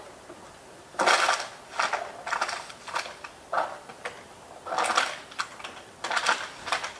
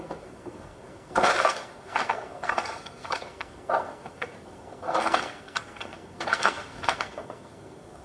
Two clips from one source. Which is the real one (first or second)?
first